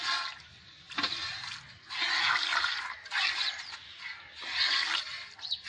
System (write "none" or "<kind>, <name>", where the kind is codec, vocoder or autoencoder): none